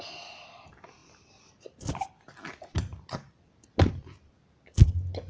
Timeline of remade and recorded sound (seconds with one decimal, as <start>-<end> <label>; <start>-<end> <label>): 0.0-5.3 recorded